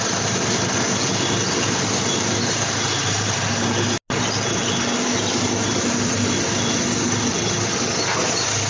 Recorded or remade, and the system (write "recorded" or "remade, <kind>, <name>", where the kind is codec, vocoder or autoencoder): recorded